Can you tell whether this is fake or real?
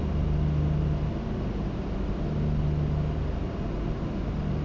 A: real